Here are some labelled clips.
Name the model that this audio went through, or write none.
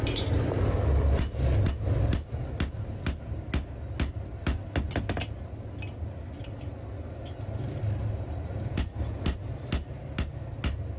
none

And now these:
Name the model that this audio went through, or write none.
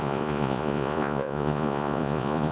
vocoder, Vocos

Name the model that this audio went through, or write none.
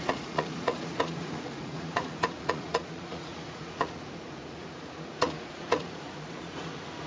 vocoder, Vocos